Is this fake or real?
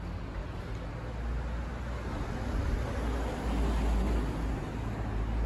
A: real